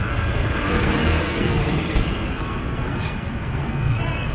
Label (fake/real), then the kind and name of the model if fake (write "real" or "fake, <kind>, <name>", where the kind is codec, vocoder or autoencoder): fake, codec, SNAC